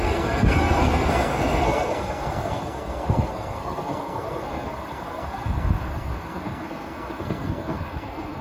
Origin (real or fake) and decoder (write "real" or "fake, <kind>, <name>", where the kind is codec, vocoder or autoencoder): fake, codec, SNAC